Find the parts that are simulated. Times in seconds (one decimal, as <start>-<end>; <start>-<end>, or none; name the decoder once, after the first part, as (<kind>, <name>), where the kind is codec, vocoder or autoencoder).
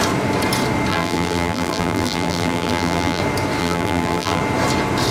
0.9-3.2 (vocoder, BigVGAN v2); 3.6-4.4